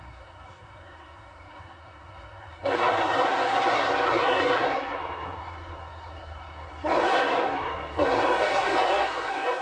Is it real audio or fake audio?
fake